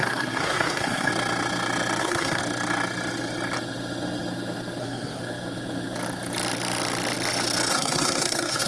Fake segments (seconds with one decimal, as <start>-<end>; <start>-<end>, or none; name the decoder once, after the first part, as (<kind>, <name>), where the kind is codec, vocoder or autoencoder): 0.0-1.1 (codec, SNAC); 2.0-2.4; 4.8-5.2; 7.7-8.7